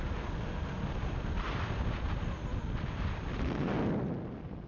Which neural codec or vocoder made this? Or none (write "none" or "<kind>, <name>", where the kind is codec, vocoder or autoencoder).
none